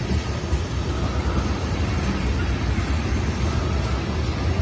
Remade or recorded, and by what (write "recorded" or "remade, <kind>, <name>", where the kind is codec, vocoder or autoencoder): recorded